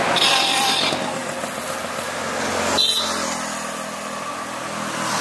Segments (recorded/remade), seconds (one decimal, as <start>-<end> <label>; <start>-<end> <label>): 0.0-5.2 recorded